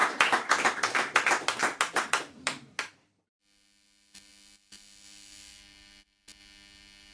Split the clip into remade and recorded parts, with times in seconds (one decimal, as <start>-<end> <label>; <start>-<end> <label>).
0.0-7.1 recorded